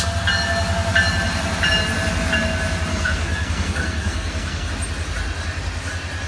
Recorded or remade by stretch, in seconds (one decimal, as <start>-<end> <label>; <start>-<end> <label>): 0.0-2.9 recorded; 2.9-4.7 remade; 4.7-6.3 recorded